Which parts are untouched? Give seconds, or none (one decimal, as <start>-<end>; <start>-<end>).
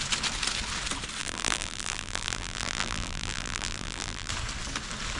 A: 0.0-1.2; 4.3-5.2